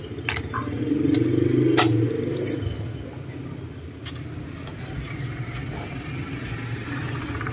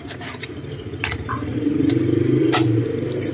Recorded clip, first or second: first